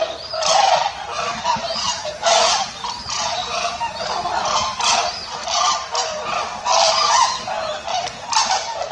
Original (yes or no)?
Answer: yes